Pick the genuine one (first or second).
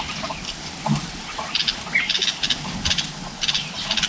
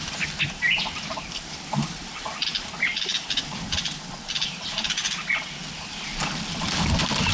first